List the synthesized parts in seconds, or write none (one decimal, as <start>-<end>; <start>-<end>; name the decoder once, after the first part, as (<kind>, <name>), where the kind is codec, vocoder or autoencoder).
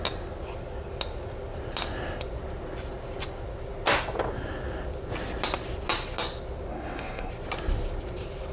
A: 6.7-7.3 (codec, SNAC)